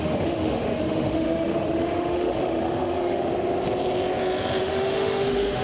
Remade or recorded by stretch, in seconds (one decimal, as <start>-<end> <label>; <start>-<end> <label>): 0.0-3.3 remade; 3.3-4.6 recorded; 4.6-5.6 remade